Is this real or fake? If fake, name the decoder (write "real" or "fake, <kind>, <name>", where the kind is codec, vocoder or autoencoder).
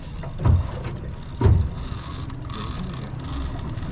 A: real